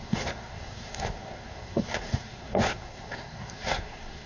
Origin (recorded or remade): remade